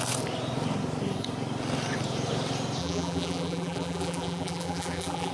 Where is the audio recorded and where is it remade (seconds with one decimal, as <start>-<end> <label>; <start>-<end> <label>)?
0.0-2.8 recorded; 2.8-5.3 remade